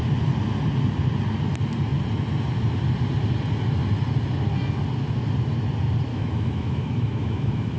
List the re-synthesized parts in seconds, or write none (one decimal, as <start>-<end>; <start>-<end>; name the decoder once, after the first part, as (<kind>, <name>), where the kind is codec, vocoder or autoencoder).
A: 6.1-7.8 (autoencoder, DAC-VAE)